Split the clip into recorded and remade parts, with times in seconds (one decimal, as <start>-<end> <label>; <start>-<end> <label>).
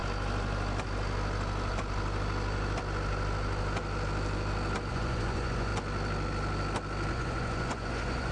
0.0-4.9 recorded; 4.9-5.7 remade; 5.7-7.1 recorded; 7.1-8.3 remade